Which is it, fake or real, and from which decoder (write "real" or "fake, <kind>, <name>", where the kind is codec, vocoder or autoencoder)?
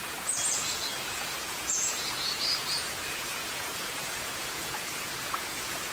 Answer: fake, vocoder, Vocos